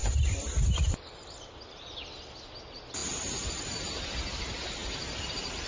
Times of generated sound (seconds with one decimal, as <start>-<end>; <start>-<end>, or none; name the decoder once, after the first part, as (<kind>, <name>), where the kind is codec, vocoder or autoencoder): 0.0-1.4 (vocoder, BigVGAN v2); 4.8-5.7